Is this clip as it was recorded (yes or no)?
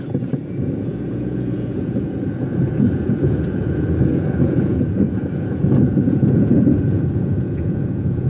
no